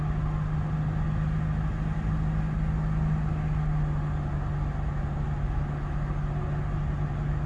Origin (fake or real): real